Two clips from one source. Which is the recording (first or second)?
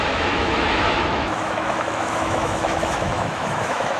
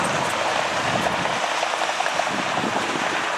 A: second